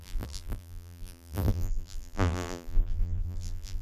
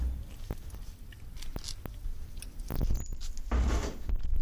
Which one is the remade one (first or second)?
first